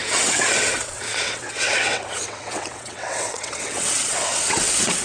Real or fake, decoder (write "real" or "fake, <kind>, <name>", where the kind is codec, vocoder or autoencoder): fake, vocoder, WaveNeXt